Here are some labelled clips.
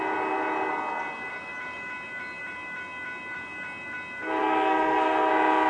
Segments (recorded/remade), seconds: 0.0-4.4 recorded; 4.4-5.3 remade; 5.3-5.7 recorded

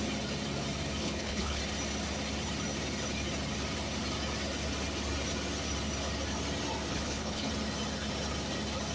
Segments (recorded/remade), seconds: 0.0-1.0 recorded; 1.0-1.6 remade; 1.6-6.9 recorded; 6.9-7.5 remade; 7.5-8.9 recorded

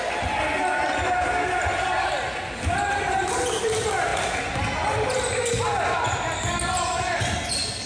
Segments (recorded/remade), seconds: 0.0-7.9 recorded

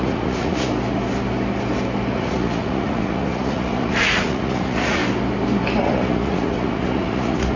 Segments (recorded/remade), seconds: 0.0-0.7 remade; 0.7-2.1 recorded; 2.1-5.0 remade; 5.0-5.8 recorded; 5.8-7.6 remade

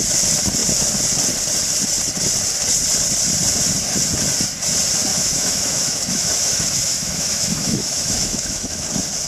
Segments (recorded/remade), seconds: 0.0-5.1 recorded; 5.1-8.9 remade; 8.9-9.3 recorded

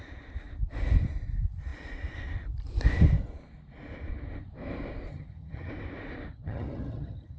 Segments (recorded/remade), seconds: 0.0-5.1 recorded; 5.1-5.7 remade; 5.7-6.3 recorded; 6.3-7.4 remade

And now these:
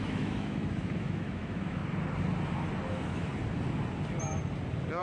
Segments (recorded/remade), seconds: 0.0-1.8 remade; 1.8-2.9 recorded; 2.9-3.3 remade; 3.3-5.0 recorded